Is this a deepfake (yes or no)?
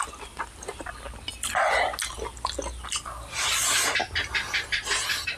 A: no